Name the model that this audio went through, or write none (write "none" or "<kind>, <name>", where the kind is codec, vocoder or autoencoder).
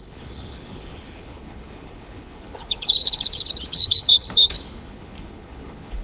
codec, HILCodec